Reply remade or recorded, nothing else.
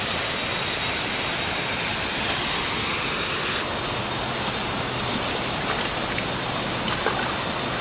recorded